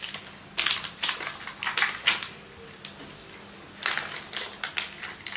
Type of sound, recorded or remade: recorded